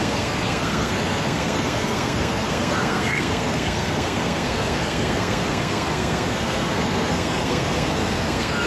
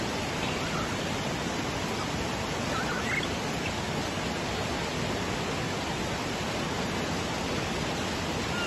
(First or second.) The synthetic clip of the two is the first